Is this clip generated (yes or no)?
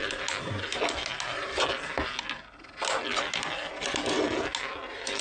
no